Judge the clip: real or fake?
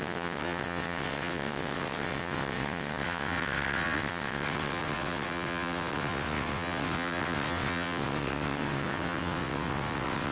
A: fake